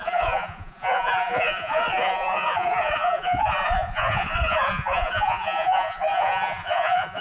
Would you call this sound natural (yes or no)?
no